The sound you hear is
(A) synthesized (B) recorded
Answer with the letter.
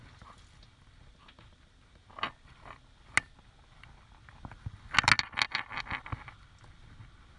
B